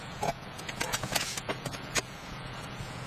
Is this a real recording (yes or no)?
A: no